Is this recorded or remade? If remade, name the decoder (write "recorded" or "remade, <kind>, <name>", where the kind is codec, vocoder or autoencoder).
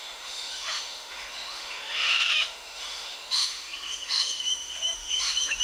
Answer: remade, autoencoder, DAC-VAE